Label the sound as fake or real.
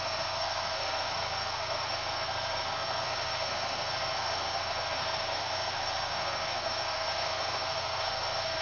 fake